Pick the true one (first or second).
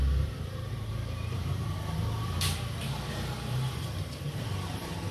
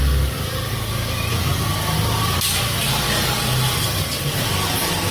second